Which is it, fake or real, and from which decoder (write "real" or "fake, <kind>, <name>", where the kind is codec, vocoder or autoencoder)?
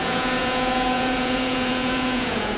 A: fake, vocoder, Vocos